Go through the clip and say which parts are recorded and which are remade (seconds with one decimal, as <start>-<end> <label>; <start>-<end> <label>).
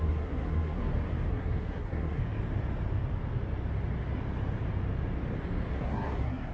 0.0-0.8 remade; 0.8-1.3 recorded; 1.3-2.2 remade; 2.2-5.7 recorded; 5.7-6.5 remade